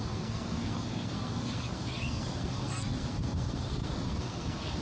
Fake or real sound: fake